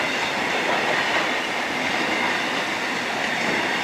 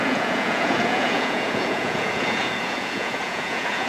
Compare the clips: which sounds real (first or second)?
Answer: first